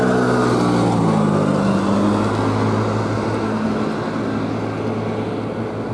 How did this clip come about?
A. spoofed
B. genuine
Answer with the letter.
B